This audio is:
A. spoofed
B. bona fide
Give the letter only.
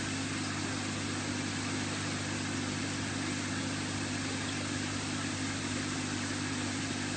B